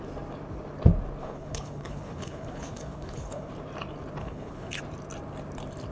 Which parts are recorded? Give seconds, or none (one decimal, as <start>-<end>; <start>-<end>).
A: 0.0-1.2; 3.5-4.2; 4.8-5.9